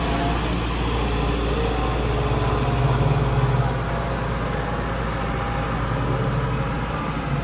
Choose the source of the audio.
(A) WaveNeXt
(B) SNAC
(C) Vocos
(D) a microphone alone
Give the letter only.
D